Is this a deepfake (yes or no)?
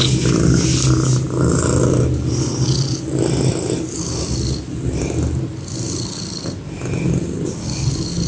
no